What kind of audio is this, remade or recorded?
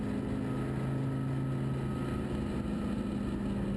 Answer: recorded